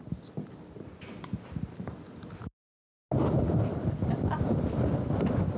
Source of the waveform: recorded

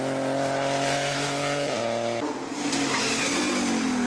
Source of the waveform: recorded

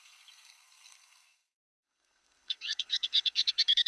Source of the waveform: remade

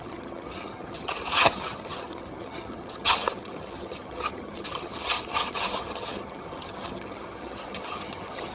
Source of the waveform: remade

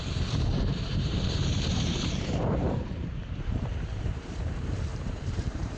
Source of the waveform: remade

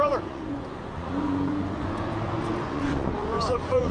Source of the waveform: remade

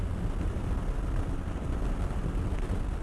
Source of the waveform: recorded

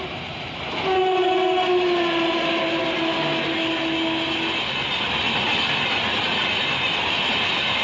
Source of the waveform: recorded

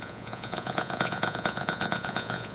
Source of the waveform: remade